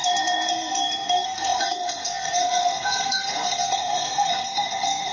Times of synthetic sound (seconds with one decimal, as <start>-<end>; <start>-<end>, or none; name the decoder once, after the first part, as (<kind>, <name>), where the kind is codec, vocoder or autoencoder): 0.0-5.1 (codec, SNAC)